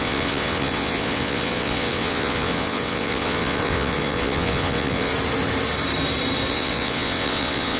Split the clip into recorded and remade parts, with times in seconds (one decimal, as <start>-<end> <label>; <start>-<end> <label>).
0.0-5.1 remade; 5.1-6.5 recorded; 6.5-7.8 remade

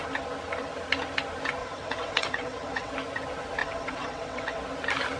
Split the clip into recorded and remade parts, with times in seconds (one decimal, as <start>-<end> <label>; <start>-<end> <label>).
0.0-1.6 recorded; 1.6-2.9 remade; 2.9-3.6 recorded; 3.6-4.6 remade; 4.6-5.2 recorded

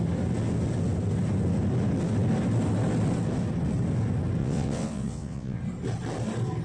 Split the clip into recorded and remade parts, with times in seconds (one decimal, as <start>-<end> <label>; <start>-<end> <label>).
0.0-4.4 recorded; 4.4-5.6 remade; 5.6-6.6 recorded

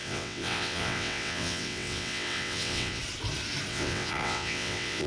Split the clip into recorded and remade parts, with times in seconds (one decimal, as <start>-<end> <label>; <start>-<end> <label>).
0.0-3.0 remade; 3.0-3.7 recorded; 3.7-5.1 remade

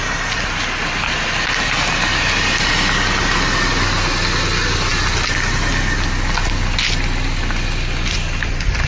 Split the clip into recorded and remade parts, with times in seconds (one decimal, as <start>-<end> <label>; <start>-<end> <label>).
0.0-8.9 recorded

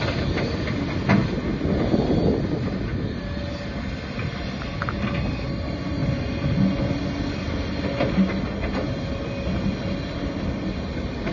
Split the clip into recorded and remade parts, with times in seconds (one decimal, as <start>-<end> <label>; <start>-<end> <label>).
0.0-11.3 recorded

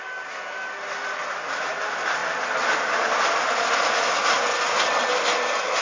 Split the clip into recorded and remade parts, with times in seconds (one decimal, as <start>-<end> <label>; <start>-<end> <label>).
0.0-5.8 recorded

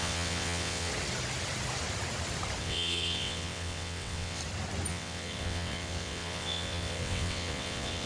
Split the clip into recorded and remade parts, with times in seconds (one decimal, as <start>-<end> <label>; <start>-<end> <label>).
0.0-0.9 remade; 0.9-2.6 recorded; 2.6-4.4 remade; 4.4-4.9 recorded; 4.9-8.1 remade